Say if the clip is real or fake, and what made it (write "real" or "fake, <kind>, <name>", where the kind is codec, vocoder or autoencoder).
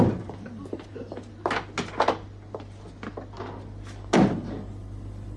real